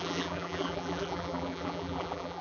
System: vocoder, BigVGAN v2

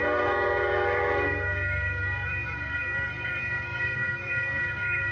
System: codec, SNAC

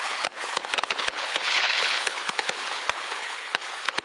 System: codec, HILCodec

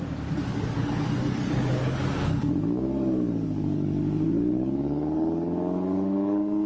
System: codec, DAC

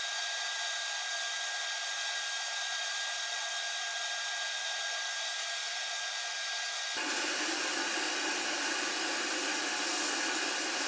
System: none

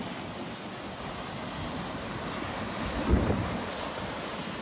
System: none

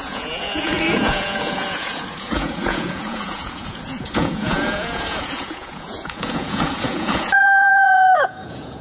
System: vocoder, Vocos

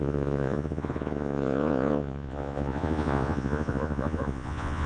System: vocoder, Vocos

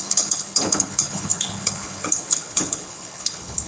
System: codec, HILCodec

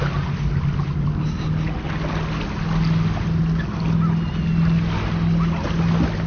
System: none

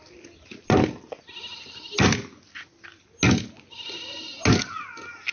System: none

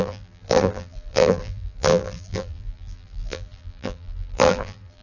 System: vocoder, BigVGAN v2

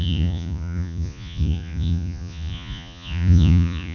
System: vocoder, Vocos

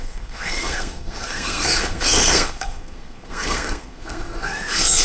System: codec, SNAC